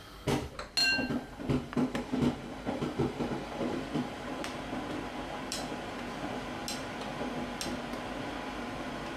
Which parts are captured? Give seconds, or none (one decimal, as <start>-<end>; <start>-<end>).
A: 0.0-0.8; 4.4-9.2